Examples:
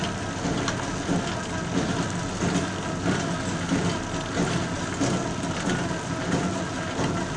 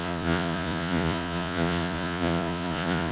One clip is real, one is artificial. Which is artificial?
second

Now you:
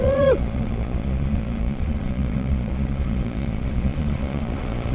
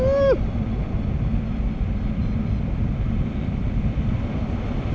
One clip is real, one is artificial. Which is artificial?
first